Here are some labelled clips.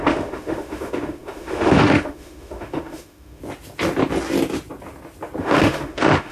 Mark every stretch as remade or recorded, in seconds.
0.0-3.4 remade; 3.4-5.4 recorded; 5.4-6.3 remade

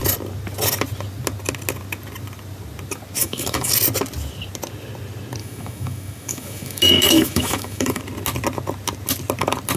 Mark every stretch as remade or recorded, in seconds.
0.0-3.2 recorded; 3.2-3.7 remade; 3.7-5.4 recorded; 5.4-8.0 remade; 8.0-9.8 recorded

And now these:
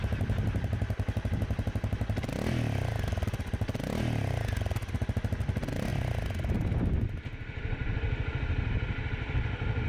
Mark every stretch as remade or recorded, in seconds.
0.0-9.9 recorded

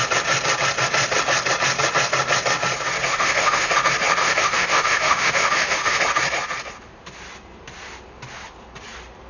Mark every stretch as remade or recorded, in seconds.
0.0-3.1 recorded; 3.1-3.7 remade; 3.7-4.2 recorded; 4.2-6.0 remade; 6.0-9.3 recorded

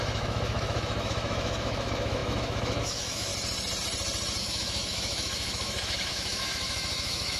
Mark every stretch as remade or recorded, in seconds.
0.0-3.3 remade; 3.3-4.4 recorded; 4.4-7.4 remade

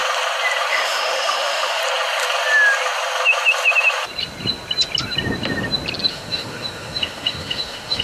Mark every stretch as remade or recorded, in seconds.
0.0-0.7 recorded; 0.7-1.8 remade; 1.8-6.1 recorded; 6.1-8.0 remade

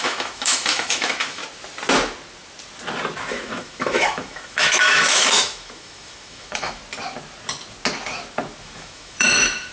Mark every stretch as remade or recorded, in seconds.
0.0-1.4 remade; 1.4-3.3 recorded; 3.3-6.8 remade; 6.8-8.6 recorded; 8.6-9.7 remade